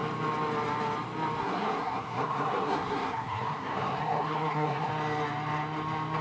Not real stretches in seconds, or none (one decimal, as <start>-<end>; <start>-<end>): 1.4-4.9